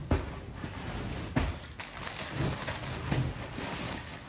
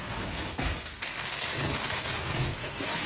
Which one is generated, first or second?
second